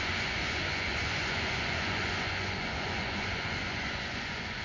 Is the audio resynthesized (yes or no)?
yes